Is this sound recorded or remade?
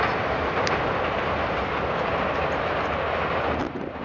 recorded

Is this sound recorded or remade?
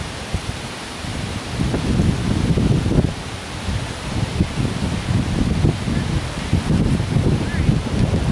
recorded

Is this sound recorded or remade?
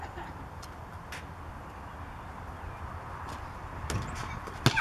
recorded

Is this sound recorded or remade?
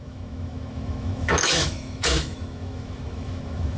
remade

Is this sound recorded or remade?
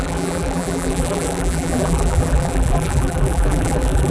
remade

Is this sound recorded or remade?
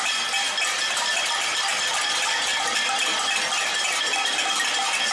recorded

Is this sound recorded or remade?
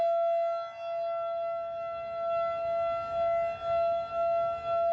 recorded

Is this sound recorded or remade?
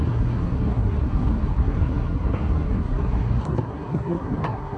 remade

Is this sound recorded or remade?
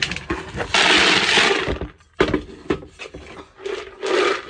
recorded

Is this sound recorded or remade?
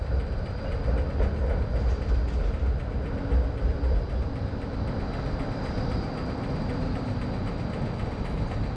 recorded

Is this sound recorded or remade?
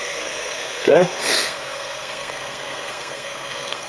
remade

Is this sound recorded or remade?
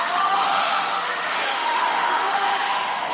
remade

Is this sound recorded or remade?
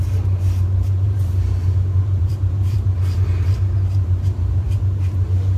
remade